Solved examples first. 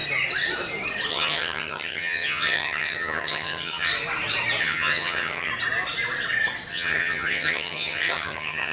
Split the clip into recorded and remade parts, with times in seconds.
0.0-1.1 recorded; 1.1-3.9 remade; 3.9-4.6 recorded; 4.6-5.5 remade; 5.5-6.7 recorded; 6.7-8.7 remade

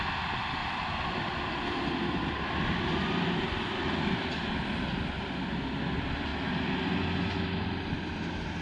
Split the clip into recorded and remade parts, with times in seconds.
0.0-0.6 recorded; 0.6-5.3 remade; 5.3-8.6 recorded

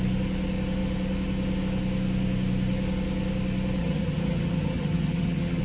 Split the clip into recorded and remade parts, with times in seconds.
0.0-3.8 recorded; 3.8-5.6 remade